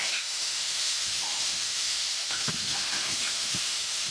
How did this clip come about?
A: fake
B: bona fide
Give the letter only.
A